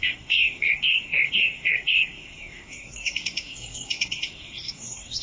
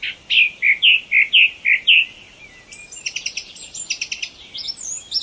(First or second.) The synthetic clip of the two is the first